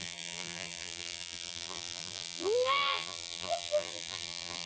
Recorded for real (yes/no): no